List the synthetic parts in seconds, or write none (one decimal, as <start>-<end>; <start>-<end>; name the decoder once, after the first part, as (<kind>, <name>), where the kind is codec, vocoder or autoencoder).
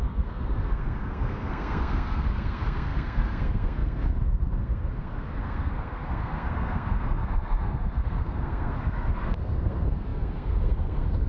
0.0-11.3 (codec, SNAC)